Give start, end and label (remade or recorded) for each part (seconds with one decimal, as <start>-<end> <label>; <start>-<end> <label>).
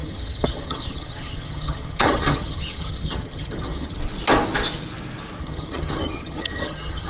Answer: 0.0-4.0 remade; 4.0-5.4 recorded; 5.4-7.1 remade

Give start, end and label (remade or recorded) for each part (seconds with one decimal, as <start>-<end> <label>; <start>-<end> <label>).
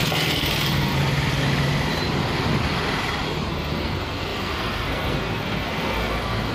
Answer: 0.0-1.0 remade; 1.0-3.5 recorded; 3.5-6.5 remade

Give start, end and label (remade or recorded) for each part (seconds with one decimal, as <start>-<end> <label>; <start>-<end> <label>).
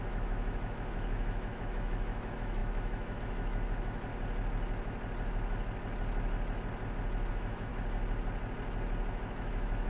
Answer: 0.0-4.1 remade; 4.1-7.3 recorded; 7.3-7.7 remade; 7.7-9.1 recorded; 9.1-9.9 remade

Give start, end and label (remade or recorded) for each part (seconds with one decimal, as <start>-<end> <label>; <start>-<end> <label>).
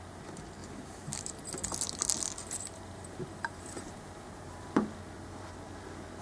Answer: 0.0-0.6 recorded; 0.6-1.3 remade; 1.3-2.4 recorded; 2.4-4.7 remade; 4.7-6.2 recorded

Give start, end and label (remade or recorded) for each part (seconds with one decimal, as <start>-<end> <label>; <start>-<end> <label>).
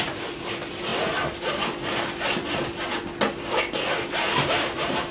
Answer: 0.0-0.9 remade; 0.9-4.0 recorded; 4.0-5.1 remade